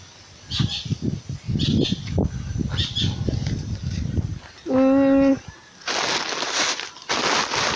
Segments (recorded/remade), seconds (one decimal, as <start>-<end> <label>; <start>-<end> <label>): 0.0-7.8 recorded